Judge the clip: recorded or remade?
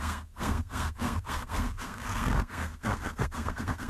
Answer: remade